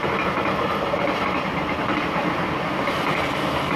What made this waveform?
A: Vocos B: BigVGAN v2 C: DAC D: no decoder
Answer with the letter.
B